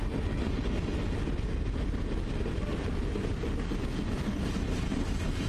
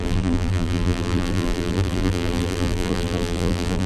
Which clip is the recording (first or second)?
first